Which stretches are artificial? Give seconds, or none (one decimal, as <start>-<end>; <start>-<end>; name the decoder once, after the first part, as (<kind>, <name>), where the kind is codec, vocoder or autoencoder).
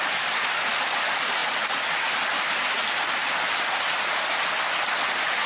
none